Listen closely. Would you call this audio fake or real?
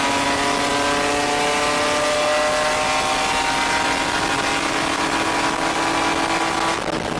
real